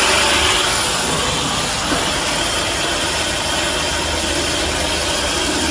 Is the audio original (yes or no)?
yes